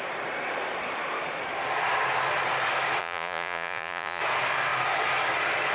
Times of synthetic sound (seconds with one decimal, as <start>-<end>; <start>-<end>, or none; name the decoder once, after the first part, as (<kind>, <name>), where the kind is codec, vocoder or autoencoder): 3.0-4.2 (vocoder, Vocos)